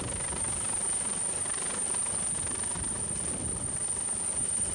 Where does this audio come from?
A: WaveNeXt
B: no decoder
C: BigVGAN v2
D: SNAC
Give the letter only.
B